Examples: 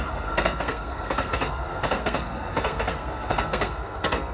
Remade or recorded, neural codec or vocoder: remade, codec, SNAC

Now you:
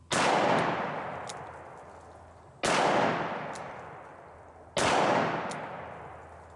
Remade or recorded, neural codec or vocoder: recorded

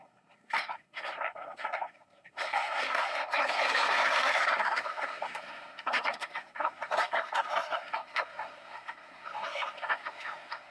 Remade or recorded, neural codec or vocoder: remade, codec, SNAC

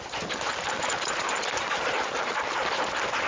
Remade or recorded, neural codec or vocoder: recorded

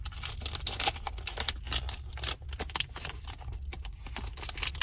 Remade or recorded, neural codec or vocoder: recorded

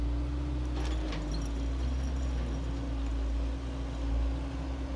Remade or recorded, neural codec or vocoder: recorded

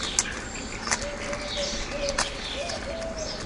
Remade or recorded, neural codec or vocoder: recorded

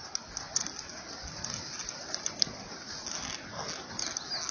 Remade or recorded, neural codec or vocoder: recorded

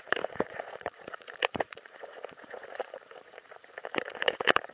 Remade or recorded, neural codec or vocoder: remade, vocoder, Vocos